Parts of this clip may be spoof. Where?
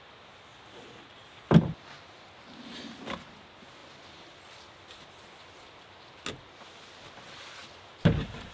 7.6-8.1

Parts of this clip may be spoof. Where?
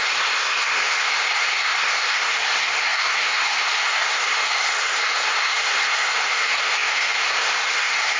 0.0-8.2